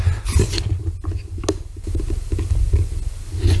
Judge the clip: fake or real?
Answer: real